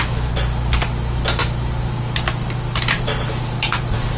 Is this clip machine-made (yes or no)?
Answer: no